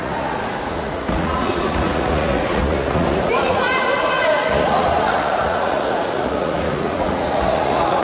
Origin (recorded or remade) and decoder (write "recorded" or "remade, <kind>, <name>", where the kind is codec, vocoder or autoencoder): remade, vocoder, Vocos